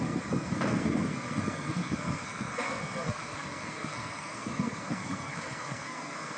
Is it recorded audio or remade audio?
remade